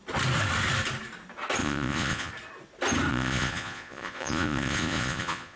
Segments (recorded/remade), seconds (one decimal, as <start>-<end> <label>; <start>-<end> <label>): 0.0-1.6 recorded; 1.6-2.3 remade; 2.3-3.1 recorded; 3.1-5.6 remade